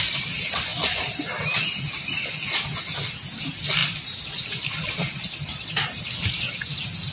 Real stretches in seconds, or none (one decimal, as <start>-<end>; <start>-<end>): 0.0-7.1